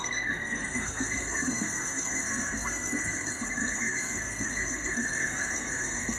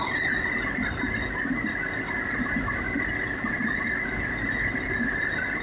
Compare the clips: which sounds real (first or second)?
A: second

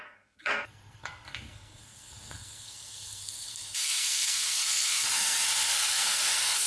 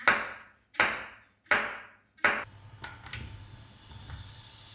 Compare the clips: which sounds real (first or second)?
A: second